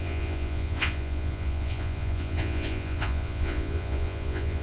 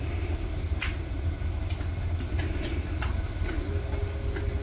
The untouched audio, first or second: second